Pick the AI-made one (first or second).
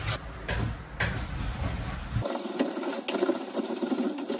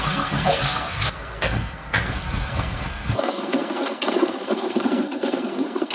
second